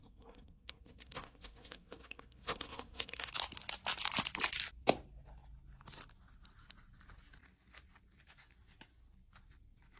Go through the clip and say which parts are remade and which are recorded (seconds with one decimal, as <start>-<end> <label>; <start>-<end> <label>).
0.0-3.3 remade; 3.3-10.0 recorded